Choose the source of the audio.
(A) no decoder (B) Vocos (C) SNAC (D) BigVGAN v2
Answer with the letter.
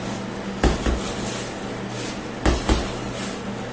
A